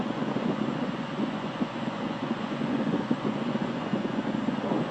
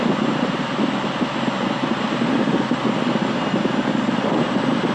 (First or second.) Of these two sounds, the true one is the second